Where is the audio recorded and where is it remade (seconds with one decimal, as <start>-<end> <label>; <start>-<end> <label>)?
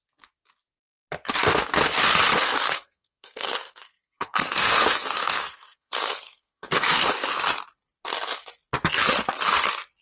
0.0-2.3 recorded; 2.3-7.1 remade; 7.1-10.0 recorded